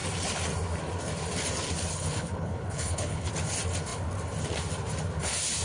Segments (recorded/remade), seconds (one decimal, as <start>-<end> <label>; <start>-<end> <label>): 0.0-1.9 recorded; 1.9-3.3 remade; 3.3-5.6 recorded